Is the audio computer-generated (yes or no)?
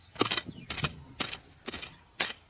no